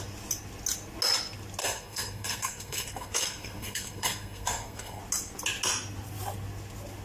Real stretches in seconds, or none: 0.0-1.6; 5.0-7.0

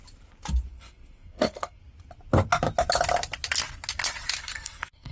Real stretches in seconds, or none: 0.0-0.7; 1.8-4.4

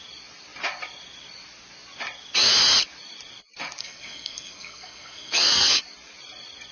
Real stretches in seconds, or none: 0.0-3.8; 5.8-6.7

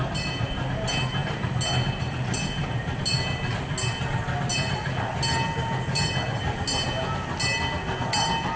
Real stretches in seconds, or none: 0.0-8.6

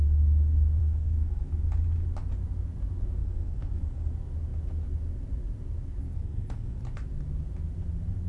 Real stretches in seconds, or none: 0.0-0.8; 1.5-3.2; 4.1-6.0; 6.8-8.3

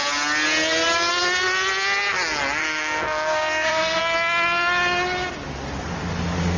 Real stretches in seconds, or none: 0.0-2.6; 4.0-6.6

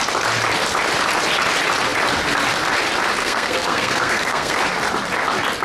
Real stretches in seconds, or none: 0.0-3.2; 4.6-5.6

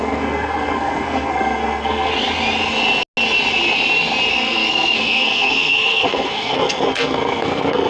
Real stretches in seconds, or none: 2.1-4.3